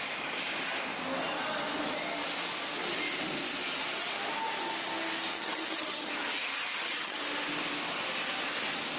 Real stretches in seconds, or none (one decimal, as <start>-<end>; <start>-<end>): 0.0-5.3; 6.1-6.5; 7.2-9.0